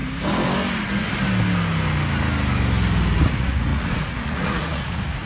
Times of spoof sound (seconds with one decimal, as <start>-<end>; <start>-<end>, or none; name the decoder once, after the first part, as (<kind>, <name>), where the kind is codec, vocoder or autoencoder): 3.2-5.3 (vocoder, Vocos)